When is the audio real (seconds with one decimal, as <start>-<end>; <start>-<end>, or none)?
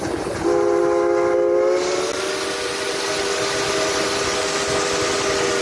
0.0-5.6